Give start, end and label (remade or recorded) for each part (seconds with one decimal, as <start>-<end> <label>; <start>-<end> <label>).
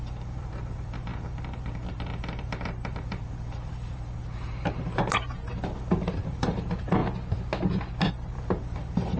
0.0-7.0 remade; 7.0-8.1 recorded; 8.1-9.2 remade